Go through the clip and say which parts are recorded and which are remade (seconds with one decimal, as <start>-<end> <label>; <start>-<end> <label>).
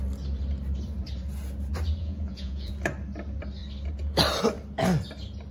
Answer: 0.0-2.0 recorded; 2.0-2.7 remade; 2.7-5.5 recorded